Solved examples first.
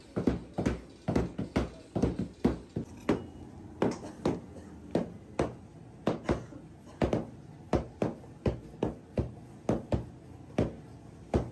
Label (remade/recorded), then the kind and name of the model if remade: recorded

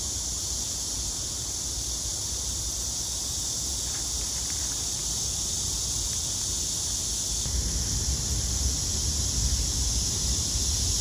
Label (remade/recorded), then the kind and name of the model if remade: recorded